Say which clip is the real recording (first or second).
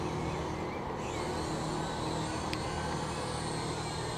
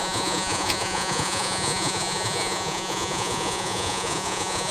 first